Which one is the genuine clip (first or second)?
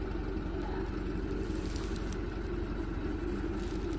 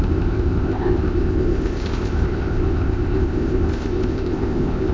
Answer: first